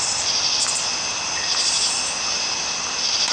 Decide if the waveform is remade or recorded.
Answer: recorded